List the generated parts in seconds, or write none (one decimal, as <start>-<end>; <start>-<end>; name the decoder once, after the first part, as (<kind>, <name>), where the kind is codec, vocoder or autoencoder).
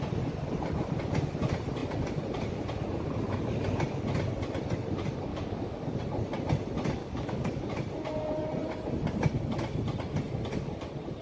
5.3-6.0 (codec, DAC); 7.0-7.7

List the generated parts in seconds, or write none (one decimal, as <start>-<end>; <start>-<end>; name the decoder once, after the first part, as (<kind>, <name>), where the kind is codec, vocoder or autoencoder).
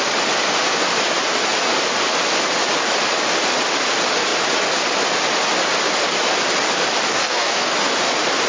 7.1-7.7 (codec, DAC)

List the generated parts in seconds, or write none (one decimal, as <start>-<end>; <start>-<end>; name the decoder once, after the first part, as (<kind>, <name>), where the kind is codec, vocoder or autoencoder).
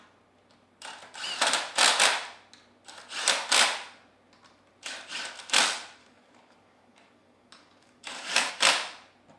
6.0-8.5 (codec, DAC)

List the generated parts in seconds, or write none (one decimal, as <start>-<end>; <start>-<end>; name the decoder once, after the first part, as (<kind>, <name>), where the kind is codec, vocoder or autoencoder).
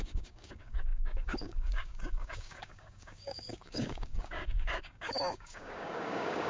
0.0-6.5 (codec, DAC)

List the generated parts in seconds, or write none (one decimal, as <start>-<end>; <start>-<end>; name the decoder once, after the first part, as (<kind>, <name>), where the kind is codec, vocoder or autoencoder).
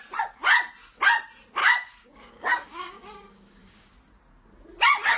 1.6-3.9 (codec, DAC)